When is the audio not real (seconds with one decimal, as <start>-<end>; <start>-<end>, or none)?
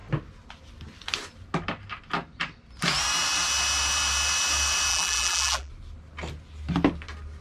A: 4.9-5.7